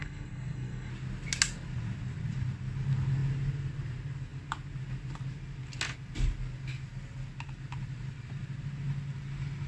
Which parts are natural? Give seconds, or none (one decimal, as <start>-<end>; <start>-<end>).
0.9-9.7